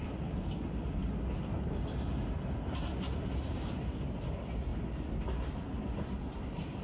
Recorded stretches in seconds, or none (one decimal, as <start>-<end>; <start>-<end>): 0.0-6.8